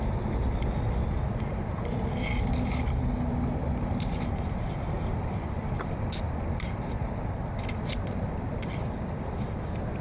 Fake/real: real